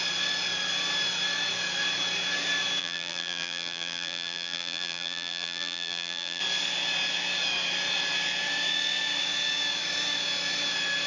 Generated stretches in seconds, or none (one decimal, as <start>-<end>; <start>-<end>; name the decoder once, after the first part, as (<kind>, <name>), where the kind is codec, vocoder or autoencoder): 2.8-6.4 (vocoder, BigVGAN v2)